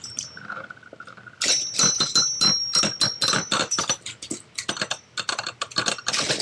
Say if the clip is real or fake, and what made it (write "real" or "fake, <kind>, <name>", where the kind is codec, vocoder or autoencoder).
real